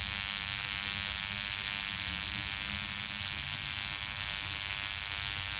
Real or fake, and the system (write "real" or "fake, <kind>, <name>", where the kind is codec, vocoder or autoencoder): real